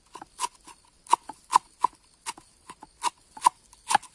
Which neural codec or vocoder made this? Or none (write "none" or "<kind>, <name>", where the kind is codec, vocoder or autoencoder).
none